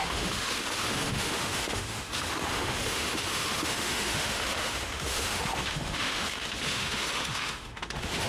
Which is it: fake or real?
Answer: fake